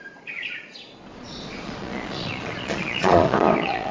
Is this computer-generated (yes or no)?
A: yes